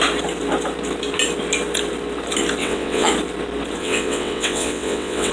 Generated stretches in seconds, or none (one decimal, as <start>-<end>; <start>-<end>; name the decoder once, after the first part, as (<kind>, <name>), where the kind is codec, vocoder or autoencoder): 2.6-3.1 (vocoder, WaveNeXt); 3.8-5.3